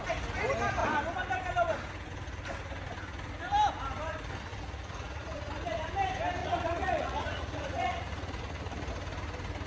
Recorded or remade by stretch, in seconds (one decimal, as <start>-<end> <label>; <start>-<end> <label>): 0.0-4.5 recorded; 4.5-5.5 remade; 5.5-6.4 recorded; 6.4-8.9 remade; 8.9-9.7 recorded